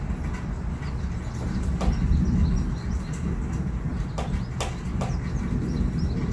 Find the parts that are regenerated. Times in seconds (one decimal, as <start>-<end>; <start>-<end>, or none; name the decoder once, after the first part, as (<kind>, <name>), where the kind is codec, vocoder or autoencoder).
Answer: none